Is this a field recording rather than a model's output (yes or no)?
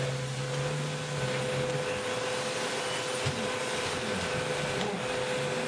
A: yes